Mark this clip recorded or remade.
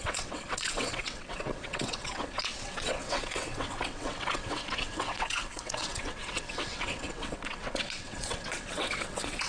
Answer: remade